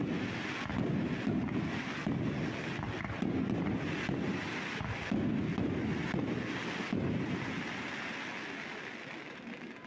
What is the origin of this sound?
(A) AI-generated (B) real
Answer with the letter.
B